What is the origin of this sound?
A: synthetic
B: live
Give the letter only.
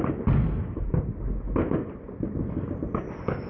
B